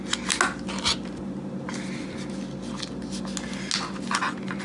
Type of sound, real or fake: real